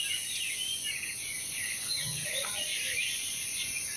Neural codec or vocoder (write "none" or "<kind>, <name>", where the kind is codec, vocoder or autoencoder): vocoder, Vocos